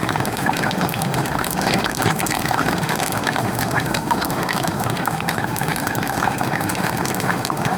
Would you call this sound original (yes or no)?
no